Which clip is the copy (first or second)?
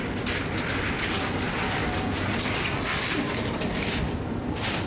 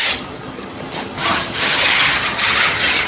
second